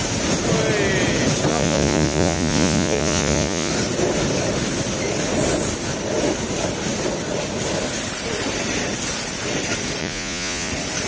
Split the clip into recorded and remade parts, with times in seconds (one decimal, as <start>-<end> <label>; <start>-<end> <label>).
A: 0.0-1.5 recorded; 1.5-3.7 remade; 3.7-10.0 recorded; 10.0-10.7 remade; 10.7-11.1 recorded